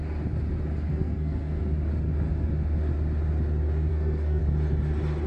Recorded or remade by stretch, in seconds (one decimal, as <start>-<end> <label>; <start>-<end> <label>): 0.0-0.9 recorded; 0.9-1.6 remade; 1.6-3.9 recorded; 3.9-4.4 remade; 4.4-5.3 recorded